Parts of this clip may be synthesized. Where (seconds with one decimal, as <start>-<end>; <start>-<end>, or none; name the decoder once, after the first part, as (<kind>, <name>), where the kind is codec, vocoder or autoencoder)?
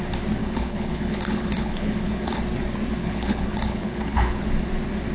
0.4-2.4 (codec, HILCodec); 3.0-4.4